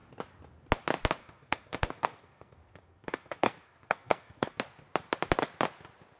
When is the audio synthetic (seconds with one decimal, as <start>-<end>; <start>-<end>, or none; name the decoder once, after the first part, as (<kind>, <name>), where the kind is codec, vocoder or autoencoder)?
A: 1.2-4.6 (codec, SNAC)